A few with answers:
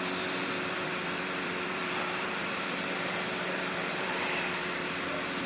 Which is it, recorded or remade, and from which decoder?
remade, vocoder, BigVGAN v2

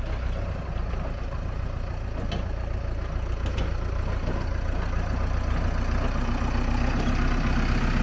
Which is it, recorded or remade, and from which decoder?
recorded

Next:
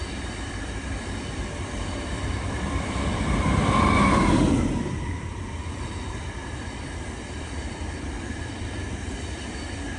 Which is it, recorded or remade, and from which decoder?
remade, vocoder, BigVGAN v2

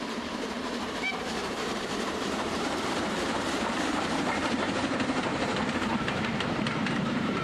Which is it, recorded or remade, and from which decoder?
remade, vocoder, BigVGAN v2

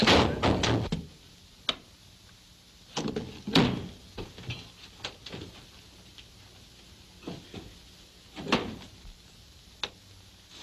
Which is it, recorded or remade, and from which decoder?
recorded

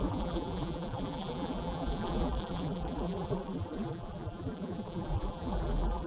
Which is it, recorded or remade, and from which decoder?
remade, vocoder, BigVGAN v2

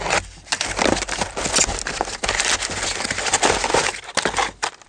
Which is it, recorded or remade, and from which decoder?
recorded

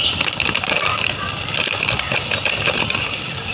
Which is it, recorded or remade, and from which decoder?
remade, vocoder, BigVGAN v2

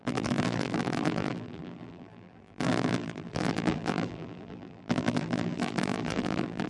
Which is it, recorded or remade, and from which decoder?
remade, vocoder, BigVGAN v2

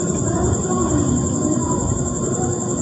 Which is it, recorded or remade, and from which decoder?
recorded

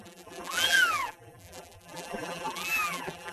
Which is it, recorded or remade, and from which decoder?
remade, vocoder, BigVGAN v2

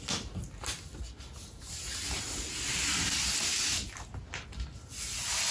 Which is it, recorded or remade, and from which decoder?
recorded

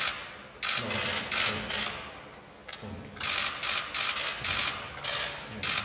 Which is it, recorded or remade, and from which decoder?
recorded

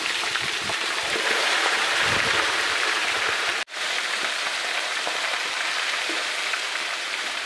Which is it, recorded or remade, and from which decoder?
remade, vocoder, BigVGAN v2